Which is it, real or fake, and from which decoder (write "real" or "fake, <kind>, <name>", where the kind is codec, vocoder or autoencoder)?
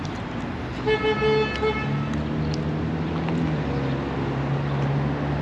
real